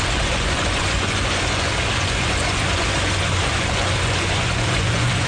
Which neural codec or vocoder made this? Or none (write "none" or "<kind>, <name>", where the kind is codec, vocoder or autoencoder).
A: vocoder, Vocos